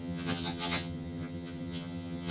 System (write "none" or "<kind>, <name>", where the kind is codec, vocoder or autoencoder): vocoder, HiFi-GAN